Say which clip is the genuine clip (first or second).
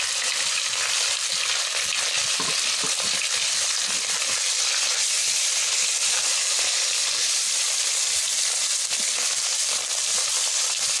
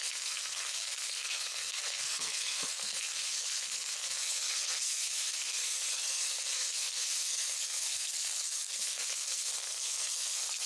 first